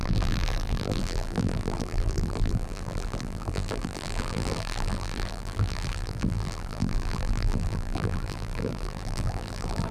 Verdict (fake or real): fake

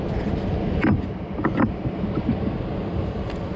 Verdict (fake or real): fake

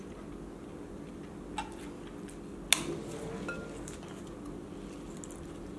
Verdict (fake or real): real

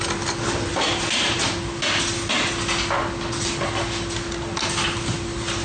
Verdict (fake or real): real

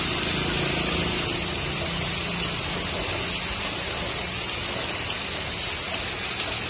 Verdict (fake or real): real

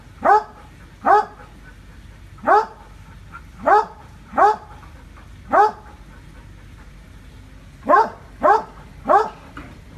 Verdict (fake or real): real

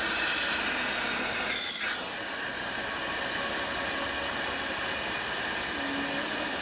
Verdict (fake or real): real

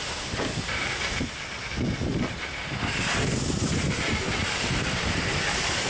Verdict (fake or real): fake